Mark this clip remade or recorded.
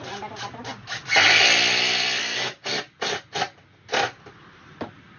recorded